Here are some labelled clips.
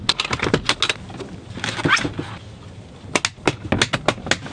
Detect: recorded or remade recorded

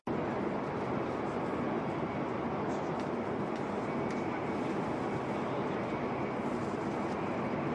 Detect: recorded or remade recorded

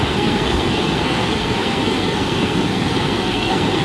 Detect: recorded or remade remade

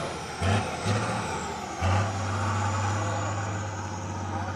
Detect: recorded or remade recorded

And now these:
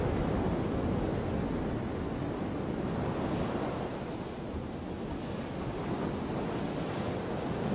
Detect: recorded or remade recorded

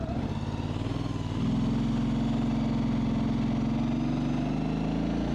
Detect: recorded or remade recorded